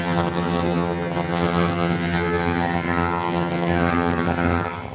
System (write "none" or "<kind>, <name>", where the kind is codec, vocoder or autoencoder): vocoder, HiFi-GAN